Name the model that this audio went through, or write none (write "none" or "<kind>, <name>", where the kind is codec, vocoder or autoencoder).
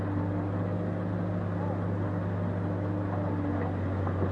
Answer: none